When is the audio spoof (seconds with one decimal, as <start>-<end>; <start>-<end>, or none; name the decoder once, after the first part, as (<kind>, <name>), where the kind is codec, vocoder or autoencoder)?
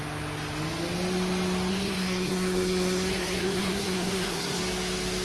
1.7-4.6 (codec, SNAC)